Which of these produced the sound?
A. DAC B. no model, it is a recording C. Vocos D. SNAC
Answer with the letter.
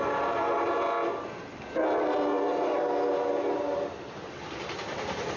B